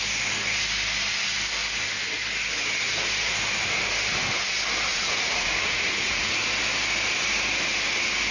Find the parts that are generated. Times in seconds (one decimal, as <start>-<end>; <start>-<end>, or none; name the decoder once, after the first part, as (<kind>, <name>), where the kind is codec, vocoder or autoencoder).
4.9-6.3 (vocoder, Vocos)